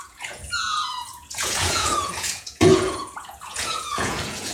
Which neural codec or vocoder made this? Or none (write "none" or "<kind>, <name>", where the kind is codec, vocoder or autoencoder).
vocoder, Vocos